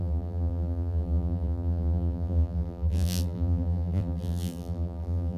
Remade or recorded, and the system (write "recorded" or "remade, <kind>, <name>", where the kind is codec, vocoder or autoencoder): remade, vocoder, BigVGAN v2